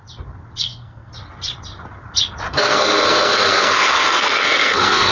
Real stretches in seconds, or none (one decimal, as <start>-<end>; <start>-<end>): 0.0-0.6; 1.1-2.5

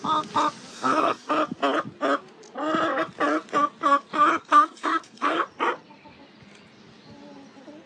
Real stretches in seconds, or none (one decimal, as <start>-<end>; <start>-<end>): 0.0-0.7; 1.3-4.3; 5.4-7.9

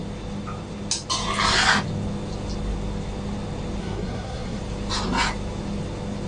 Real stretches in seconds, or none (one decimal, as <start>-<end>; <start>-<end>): 0.0-3.8; 4.6-6.3

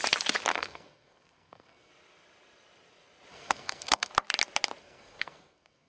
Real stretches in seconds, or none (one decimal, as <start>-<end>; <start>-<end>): 0.0-0.5; 1.9-3.3; 4.1-4.8

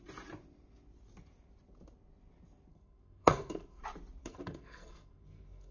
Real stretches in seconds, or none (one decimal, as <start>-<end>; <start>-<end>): 0.0-2.7; 3.8-4.2

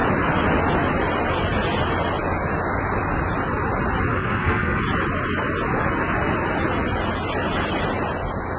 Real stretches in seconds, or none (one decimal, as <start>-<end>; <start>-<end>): 0.0-4.1; 4.8-8.6

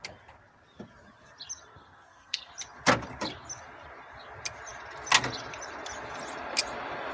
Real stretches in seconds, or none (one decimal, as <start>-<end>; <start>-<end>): 0.0-1.7; 2.5-7.1

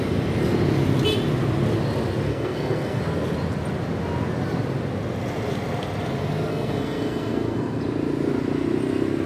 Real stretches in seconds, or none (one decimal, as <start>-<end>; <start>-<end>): 0.0-2.3; 3.0-6.5; 7.8-9.3